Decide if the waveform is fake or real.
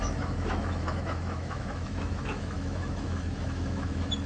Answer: fake